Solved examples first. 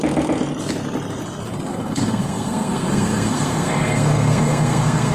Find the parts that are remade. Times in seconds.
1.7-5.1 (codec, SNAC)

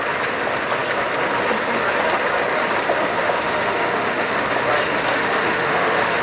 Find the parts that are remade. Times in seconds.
3.1-4.3 (autoencoder, DAC-VAE); 5.1-6.2